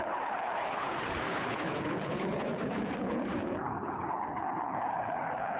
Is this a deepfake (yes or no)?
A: yes